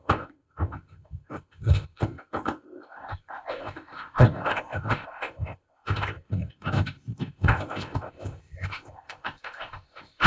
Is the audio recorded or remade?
remade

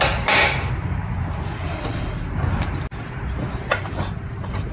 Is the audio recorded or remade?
recorded